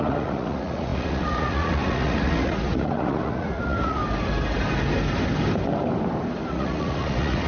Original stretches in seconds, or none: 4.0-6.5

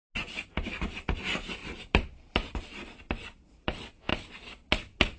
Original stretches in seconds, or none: 0.0-5.2

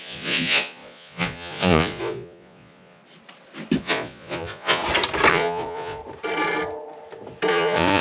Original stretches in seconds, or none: 3.0-3.8; 4.8-5.3; 6.0-7.5

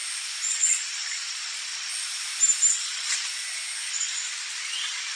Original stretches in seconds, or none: 0.0-0.5; 1.9-2.7; 3.3-3.9

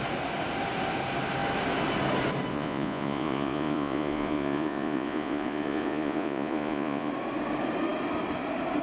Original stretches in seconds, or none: 0.0-2.5; 7.1-8.8

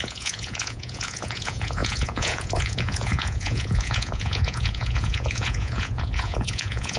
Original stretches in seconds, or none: none